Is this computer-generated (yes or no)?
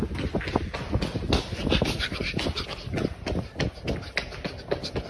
no